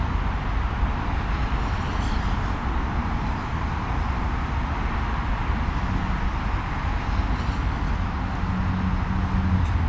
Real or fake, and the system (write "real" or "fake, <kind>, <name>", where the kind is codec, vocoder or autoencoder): real